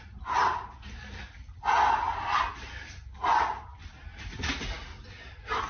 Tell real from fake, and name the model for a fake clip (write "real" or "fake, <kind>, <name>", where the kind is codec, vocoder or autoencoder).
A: real